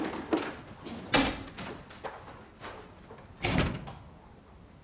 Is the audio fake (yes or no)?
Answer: no